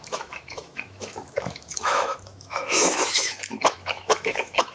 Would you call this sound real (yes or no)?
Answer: no